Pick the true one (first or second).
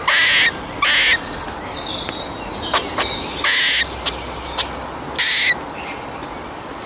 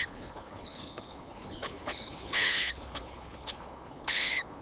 first